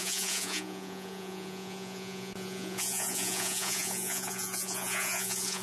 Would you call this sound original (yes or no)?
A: no